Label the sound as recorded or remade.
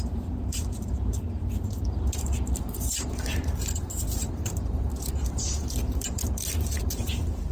remade